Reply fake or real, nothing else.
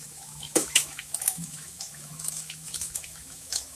fake